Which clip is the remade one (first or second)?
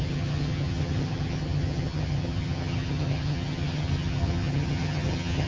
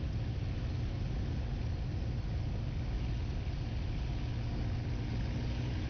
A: first